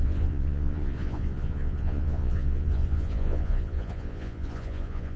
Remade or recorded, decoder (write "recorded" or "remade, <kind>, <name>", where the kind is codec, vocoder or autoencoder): remade, vocoder, Vocos